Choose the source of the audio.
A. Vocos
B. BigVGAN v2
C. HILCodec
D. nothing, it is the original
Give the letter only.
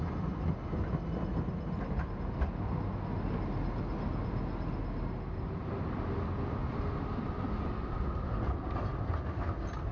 D